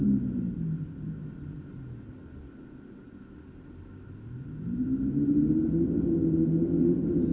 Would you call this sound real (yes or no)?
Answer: yes